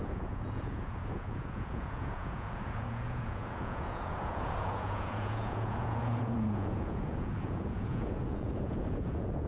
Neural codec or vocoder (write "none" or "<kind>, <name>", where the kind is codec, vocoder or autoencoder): vocoder, Vocos